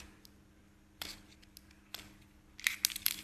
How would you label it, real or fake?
real